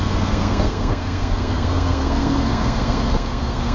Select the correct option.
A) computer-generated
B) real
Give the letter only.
A